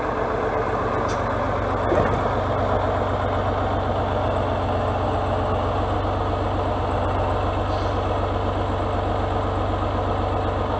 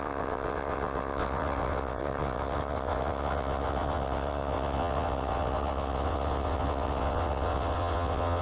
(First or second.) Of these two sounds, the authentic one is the first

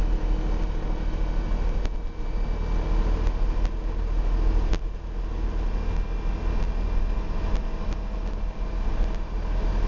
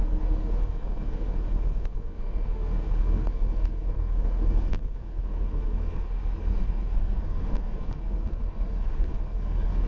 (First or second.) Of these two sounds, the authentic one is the first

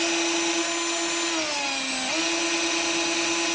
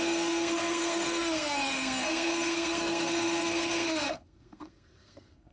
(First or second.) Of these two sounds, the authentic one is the first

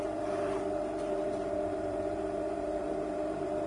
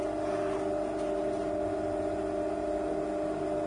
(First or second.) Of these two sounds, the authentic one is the second